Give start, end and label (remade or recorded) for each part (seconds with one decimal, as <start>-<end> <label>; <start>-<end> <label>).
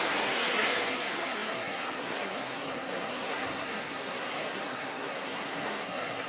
0.0-6.3 remade